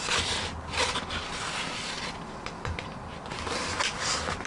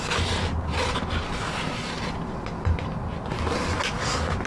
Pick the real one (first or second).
second